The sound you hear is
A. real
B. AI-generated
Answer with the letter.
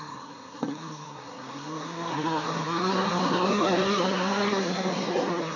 B